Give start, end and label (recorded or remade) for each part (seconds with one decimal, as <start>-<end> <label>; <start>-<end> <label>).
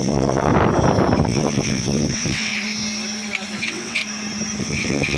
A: 0.0-0.5 remade; 0.5-1.2 recorded; 1.2-2.5 remade; 2.5-3.6 recorded; 3.6-4.0 remade; 4.0-4.6 recorded; 4.6-5.2 remade